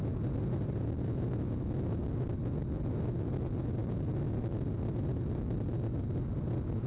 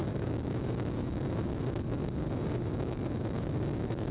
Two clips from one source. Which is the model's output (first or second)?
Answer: second